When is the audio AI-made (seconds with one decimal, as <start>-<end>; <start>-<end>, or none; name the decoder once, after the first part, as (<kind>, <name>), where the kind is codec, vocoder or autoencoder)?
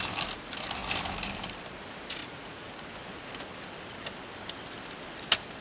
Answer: 2.2-2.7 (vocoder, Vocos)